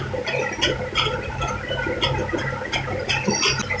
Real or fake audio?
real